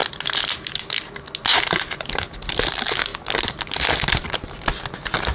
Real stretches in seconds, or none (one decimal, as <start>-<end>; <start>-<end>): 0.0-1.5; 2.1-5.3